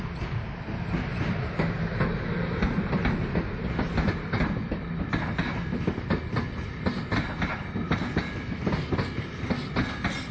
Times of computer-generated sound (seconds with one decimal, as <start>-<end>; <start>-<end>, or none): 1.1-2.0